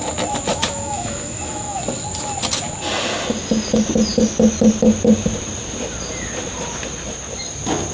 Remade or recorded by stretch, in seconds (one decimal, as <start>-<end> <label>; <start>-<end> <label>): 0.0-0.5 recorded; 0.5-1.8 remade; 1.8-7.9 recorded